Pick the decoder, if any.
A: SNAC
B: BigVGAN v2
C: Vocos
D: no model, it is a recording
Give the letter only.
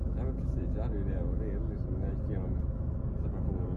D